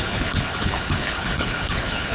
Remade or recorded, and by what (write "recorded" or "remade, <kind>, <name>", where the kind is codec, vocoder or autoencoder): remade, codec, HILCodec